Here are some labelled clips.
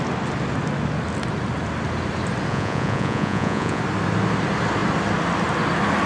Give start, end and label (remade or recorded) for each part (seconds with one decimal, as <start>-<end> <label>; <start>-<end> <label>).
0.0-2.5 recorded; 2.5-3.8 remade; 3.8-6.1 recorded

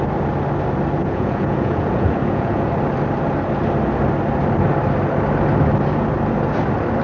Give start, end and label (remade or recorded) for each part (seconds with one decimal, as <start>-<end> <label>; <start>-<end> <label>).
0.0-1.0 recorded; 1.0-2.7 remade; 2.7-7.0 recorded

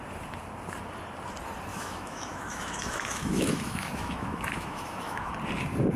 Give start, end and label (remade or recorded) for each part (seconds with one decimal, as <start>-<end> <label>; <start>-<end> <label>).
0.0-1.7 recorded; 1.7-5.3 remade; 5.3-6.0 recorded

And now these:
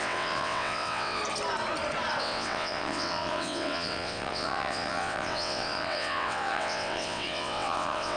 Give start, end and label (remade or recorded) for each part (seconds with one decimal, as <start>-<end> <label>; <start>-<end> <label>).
0.0-1.2 remade; 1.2-2.2 recorded; 2.2-8.2 remade

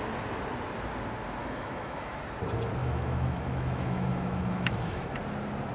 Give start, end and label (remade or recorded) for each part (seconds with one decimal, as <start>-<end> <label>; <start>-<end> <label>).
0.0-1.4 recorded; 1.4-2.2 remade; 2.2-2.8 recorded; 2.8-5.2 remade; 5.2-5.7 recorded

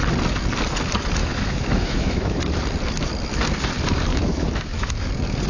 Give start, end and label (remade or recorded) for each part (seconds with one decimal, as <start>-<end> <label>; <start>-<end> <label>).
0.0-1.2 recorded; 1.2-2.4 remade; 2.4-4.1 recorded; 4.1-5.1 remade; 5.1-5.5 recorded

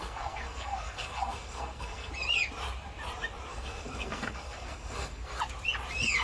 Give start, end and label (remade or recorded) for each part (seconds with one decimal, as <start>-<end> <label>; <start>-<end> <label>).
0.0-2.1 remade; 2.1-3.5 recorded; 3.5-5.4 remade; 5.4-6.2 recorded